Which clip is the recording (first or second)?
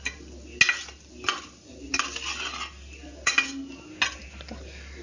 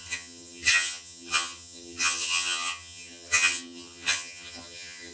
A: first